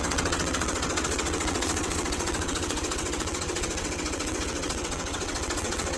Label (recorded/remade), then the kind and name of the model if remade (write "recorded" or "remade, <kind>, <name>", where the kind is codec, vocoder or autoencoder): remade, vocoder, WaveNeXt